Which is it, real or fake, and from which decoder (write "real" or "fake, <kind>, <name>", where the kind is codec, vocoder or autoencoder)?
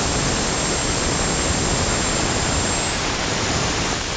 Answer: real